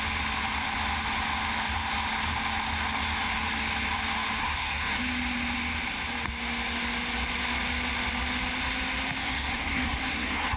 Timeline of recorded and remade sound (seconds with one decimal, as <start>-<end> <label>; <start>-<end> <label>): 0.0-4.4 recorded; 4.4-5.0 remade; 5.0-9.2 recorded; 9.2-10.6 remade